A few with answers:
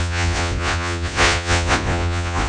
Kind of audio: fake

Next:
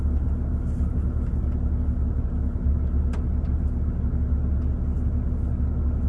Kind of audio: real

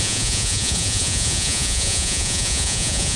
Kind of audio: fake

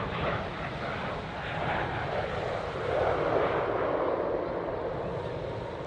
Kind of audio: real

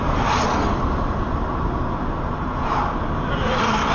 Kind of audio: real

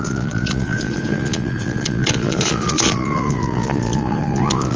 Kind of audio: fake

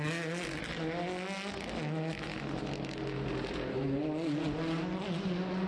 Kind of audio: real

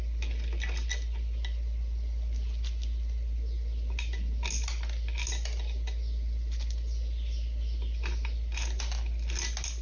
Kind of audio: real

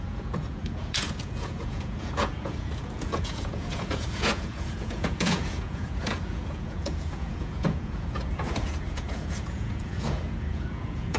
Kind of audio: fake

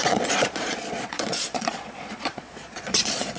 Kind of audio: fake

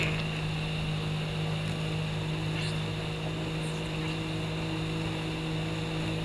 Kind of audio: real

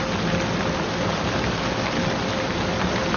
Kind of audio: real